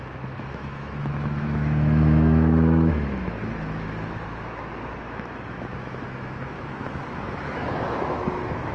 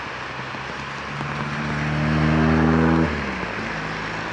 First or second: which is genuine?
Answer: second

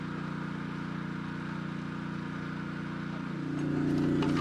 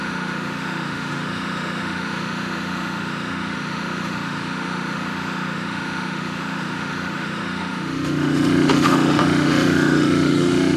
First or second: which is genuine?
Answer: first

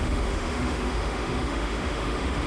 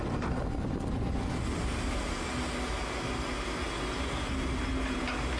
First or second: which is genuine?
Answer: second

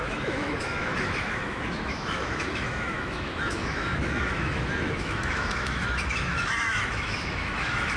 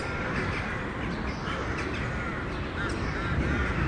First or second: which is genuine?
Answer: second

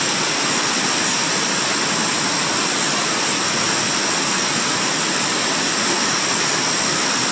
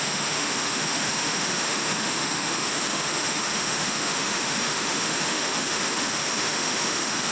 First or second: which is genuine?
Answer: first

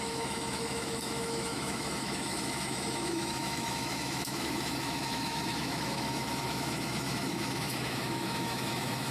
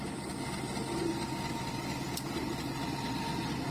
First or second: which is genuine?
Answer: second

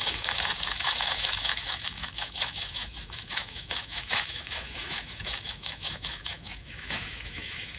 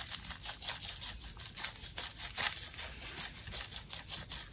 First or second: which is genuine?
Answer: second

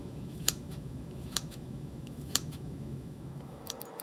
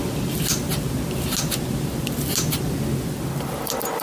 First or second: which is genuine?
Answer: second